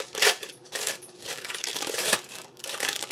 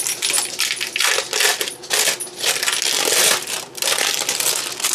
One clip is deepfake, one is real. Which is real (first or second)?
second